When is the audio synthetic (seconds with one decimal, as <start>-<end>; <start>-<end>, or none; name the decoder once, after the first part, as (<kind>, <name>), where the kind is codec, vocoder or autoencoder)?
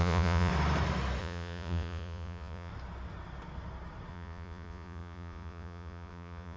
0.0-0.5 (vocoder, Vocos); 1.2-2.7; 4.1-6.6